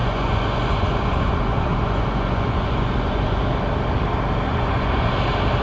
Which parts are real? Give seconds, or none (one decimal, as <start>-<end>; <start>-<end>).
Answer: 3.4-4.5; 5.1-5.6